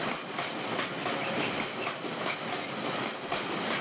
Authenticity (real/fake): real